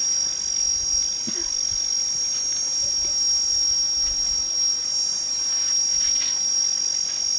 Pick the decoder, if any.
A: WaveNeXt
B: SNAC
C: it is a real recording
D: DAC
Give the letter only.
C